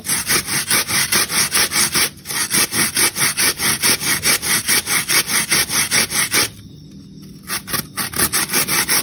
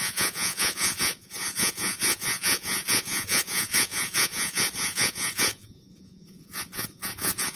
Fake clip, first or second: second